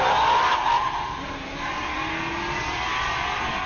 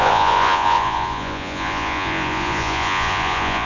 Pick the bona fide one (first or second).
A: first